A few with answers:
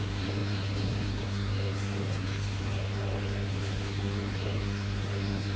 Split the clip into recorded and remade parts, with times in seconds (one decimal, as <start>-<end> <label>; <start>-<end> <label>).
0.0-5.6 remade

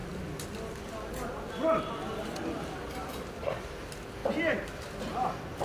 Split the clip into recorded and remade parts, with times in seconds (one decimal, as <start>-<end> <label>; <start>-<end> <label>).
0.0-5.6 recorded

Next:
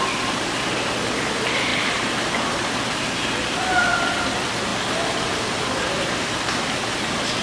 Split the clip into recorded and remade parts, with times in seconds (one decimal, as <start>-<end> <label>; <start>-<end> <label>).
0.0-7.4 recorded